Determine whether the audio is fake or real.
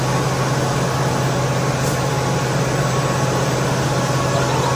real